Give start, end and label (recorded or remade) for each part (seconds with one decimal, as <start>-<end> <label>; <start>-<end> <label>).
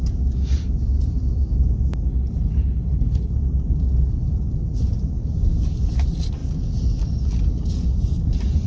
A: 0.0-2.1 recorded; 2.1-3.3 remade; 3.3-8.7 recorded